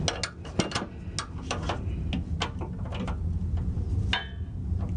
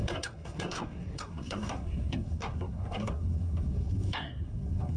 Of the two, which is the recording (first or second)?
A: first